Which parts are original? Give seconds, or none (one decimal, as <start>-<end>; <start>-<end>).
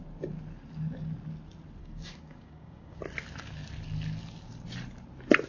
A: 0.0-1.8; 3.0-5.5